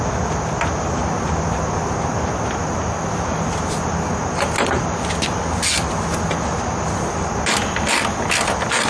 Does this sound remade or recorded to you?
recorded